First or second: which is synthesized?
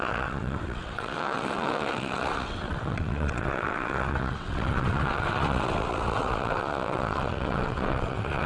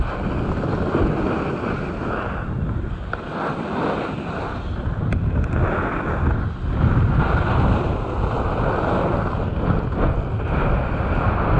first